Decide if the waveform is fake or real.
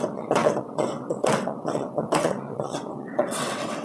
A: fake